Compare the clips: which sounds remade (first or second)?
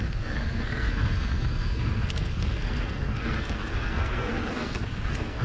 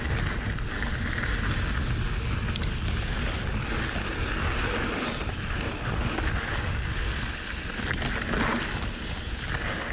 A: first